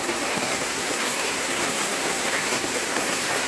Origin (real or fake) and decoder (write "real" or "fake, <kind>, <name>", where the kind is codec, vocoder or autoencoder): fake, codec, SNAC